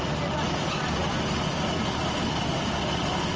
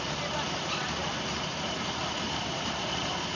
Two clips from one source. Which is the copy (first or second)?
second